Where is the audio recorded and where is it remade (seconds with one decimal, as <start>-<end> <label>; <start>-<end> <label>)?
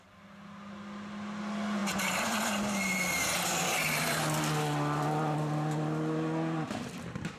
0.0-7.4 recorded